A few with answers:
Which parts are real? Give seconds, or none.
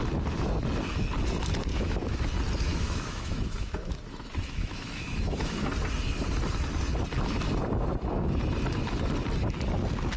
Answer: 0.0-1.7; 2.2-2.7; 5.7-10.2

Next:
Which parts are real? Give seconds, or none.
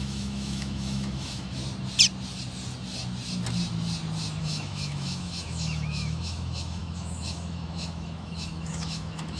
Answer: 1.6-4.4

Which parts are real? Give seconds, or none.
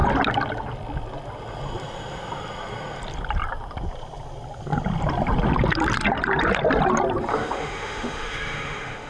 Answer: 0.0-7.3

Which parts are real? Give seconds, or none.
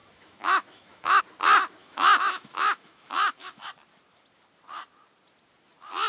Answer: 1.2-1.8; 3.7-6.1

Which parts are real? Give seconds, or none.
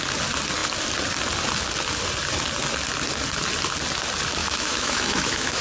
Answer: 0.0-4.4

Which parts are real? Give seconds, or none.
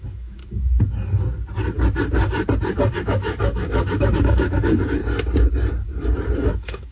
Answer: 0.4-3.0; 5.0-6.5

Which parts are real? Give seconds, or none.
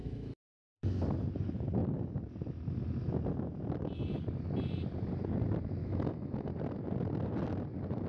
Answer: 1.0-5.8; 6.5-8.1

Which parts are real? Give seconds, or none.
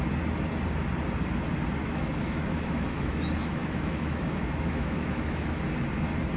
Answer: 0.0-1.8; 5.6-6.4